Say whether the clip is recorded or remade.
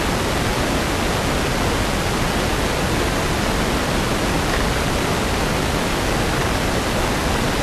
recorded